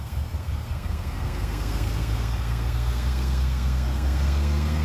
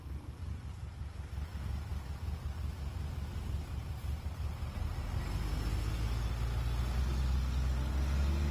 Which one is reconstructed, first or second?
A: first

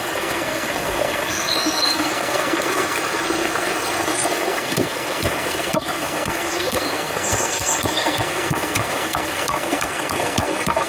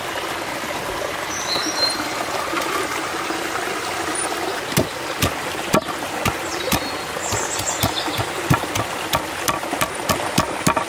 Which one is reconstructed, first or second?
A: first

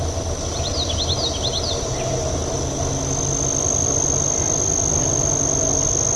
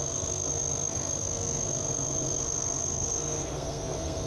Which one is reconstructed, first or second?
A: second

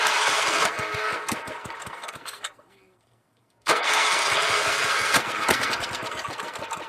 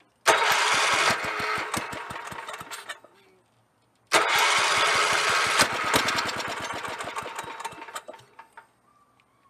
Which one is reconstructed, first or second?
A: first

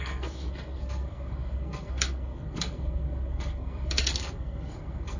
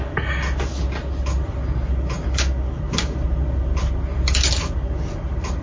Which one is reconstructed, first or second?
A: first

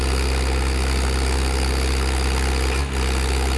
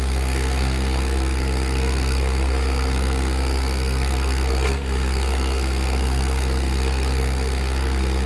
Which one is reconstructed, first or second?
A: second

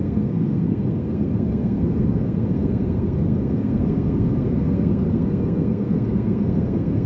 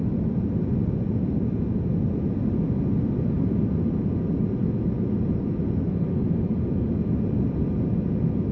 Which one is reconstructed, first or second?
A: first